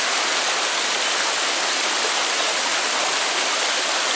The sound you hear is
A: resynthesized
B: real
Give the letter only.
B